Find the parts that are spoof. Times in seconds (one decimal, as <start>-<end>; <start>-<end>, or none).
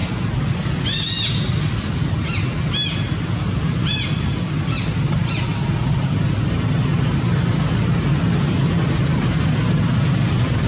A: none